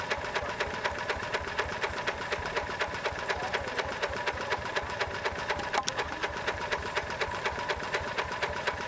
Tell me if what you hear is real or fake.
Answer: fake